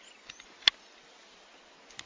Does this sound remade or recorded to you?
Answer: recorded